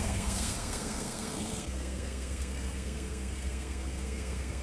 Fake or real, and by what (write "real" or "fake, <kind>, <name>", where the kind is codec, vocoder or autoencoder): fake, codec, SNAC